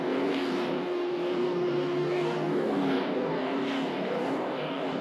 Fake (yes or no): yes